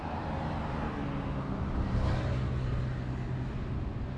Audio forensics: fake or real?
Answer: real